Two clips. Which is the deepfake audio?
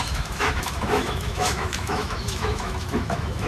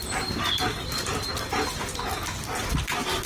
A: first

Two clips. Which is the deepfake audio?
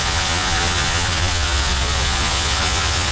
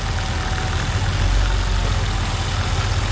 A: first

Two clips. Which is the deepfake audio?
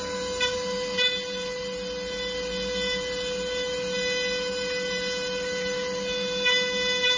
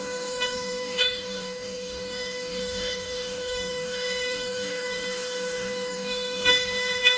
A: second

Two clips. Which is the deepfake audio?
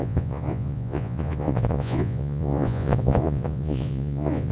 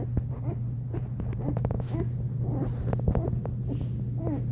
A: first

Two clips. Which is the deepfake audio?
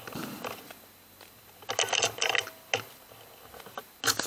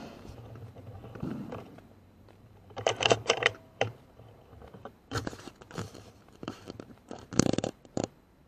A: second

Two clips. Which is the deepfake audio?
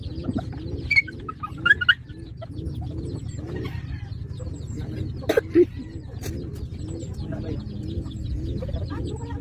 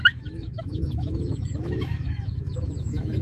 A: second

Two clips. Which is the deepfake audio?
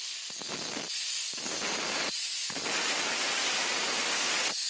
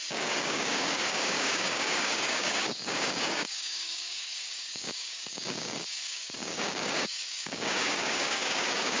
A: second